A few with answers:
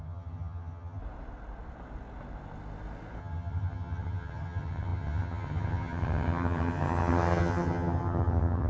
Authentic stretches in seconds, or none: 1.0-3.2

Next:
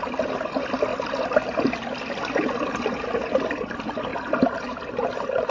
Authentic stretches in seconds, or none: 0.0-5.5

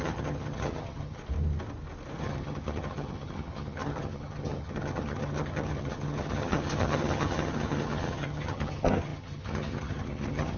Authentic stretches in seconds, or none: 1.2-2.2